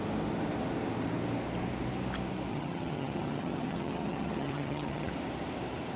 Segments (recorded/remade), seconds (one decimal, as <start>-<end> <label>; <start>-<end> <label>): 0.0-2.5 recorded; 2.5-5.1 remade; 5.1-6.0 recorded

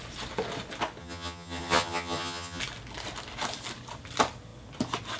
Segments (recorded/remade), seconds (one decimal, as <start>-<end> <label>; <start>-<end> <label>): 0.0-1.0 recorded; 1.0-2.6 remade; 2.6-5.2 recorded

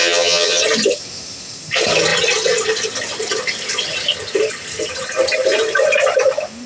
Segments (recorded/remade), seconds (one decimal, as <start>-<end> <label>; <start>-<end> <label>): 0.0-0.6 remade; 0.6-6.7 recorded

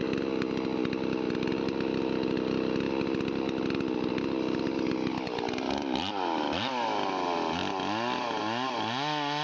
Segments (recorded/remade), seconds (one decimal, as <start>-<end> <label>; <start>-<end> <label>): 0.0-9.4 recorded

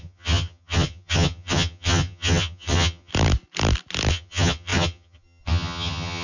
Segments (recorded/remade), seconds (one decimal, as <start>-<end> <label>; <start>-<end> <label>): 0.0-3.1 remade; 3.1-4.1 recorded; 4.1-6.2 remade

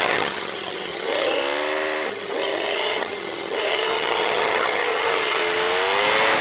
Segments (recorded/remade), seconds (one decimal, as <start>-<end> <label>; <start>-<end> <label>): 0.0-1.4 remade; 1.4-2.1 recorded; 2.1-5.4 remade; 5.4-6.4 recorded